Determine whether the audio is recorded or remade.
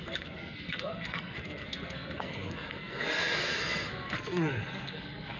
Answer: remade